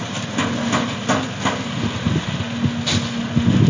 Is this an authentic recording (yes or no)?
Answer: yes